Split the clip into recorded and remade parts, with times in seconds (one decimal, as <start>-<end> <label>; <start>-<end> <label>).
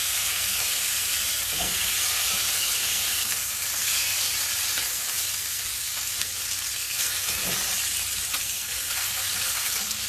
0.0-4.3 remade; 4.3-4.9 recorded; 4.9-7.4 remade; 7.4-8.4 recorded; 8.4-10.1 remade